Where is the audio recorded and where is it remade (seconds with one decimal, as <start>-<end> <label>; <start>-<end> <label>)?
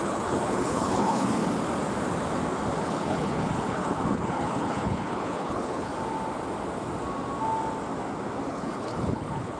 0.0-1.4 remade; 1.4-2.8 recorded; 2.8-5.9 remade; 5.9-8.5 recorded; 8.5-9.6 remade